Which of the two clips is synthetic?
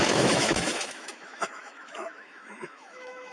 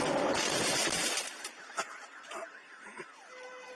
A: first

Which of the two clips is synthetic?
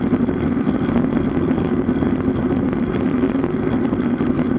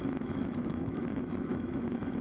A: second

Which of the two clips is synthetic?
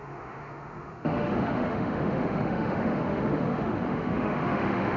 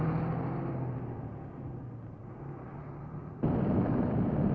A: first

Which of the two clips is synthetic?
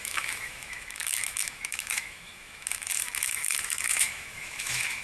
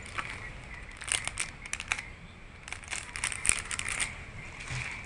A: first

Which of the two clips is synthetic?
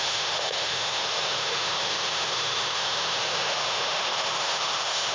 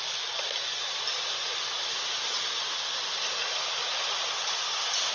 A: first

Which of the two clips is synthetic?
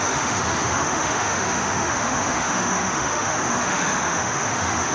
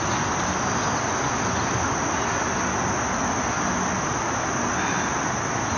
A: first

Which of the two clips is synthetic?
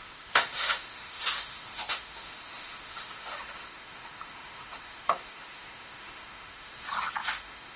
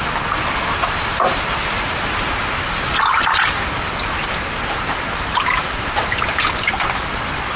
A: first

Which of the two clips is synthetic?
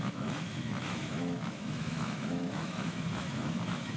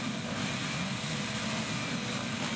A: first